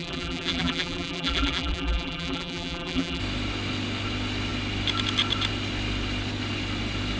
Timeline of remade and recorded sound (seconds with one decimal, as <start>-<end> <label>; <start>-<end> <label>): 0.0-3.2 remade; 3.2-7.2 recorded